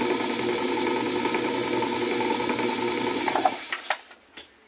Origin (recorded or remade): recorded